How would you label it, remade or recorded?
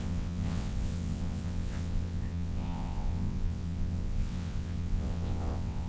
remade